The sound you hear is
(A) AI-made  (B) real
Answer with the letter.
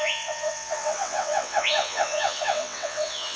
A